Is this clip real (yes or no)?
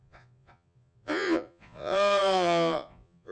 no